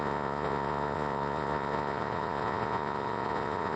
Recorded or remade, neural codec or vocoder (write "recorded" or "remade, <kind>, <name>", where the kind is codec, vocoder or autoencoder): remade, vocoder, Vocos